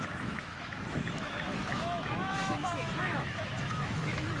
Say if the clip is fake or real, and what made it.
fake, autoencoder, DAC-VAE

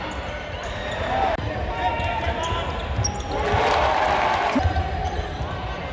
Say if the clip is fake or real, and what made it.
real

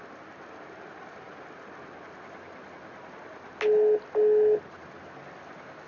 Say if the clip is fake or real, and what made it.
real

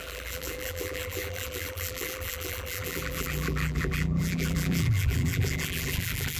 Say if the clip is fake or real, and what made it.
fake, vocoder, BigVGAN v2